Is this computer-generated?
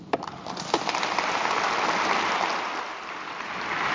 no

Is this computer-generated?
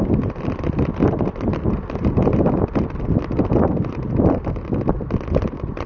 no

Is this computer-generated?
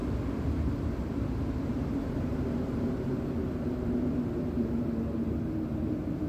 no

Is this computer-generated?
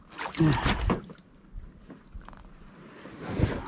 no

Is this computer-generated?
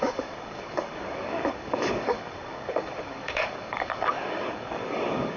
yes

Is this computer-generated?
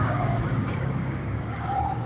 yes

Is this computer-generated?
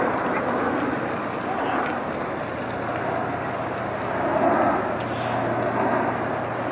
no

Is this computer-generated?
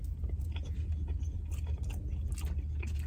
no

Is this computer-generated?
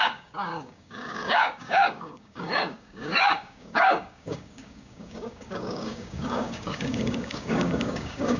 yes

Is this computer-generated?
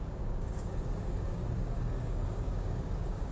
yes